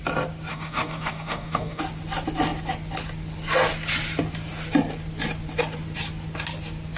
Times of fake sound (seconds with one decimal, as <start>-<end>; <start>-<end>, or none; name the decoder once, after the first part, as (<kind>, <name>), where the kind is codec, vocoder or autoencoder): 0.5-1.8 (codec, DAC)